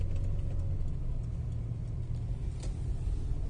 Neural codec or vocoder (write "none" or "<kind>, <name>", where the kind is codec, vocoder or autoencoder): none